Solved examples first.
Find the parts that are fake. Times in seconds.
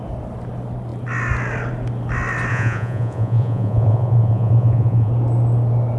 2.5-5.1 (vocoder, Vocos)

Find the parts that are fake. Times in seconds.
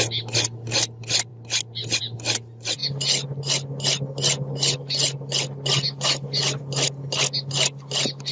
none